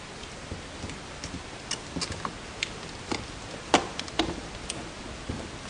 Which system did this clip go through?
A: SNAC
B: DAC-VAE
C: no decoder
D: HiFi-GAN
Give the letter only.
C